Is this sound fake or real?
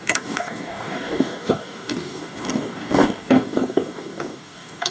fake